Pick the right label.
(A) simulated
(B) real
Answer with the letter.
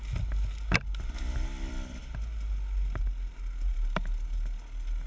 B